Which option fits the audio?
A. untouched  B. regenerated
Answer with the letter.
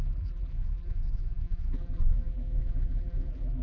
B